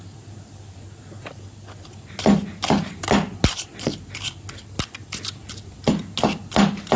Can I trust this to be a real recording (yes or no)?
yes